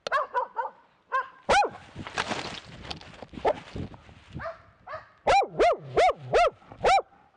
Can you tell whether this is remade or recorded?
recorded